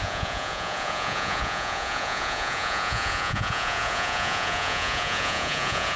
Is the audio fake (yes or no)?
yes